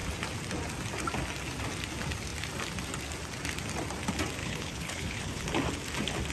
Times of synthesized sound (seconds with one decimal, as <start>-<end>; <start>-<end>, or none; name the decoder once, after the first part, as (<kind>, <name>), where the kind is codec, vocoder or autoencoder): 4.4-5.4 (codec, HILCodec)